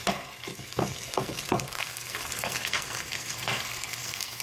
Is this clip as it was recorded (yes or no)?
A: no